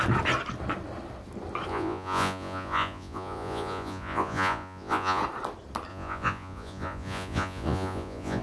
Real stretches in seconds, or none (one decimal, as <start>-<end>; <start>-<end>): 0.0-1.7; 5.2-5.9